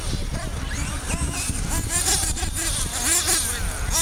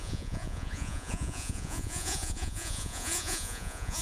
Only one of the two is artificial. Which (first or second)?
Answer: second